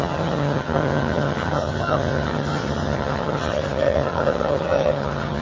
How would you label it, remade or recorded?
remade